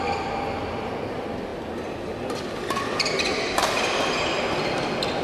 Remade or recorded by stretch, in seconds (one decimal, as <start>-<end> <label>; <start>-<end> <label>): 0.0-5.2 recorded